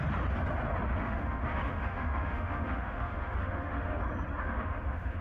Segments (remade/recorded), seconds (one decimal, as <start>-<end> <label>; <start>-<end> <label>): 0.0-0.9 recorded; 0.9-4.0 remade; 4.0-4.4 recorded; 4.4-5.2 remade